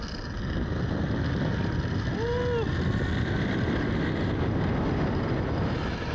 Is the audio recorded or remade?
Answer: recorded